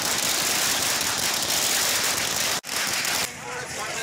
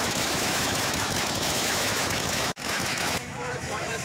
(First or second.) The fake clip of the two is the second